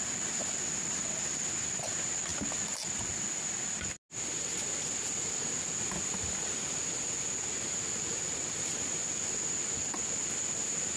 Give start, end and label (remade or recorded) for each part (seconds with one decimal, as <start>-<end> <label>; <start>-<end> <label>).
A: 0.0-11.0 recorded